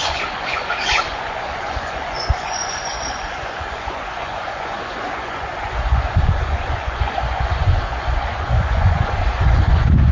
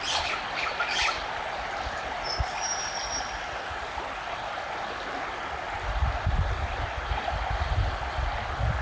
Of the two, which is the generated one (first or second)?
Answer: first